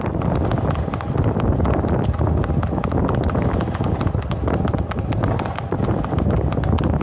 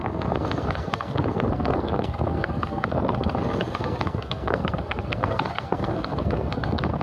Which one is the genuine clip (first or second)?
first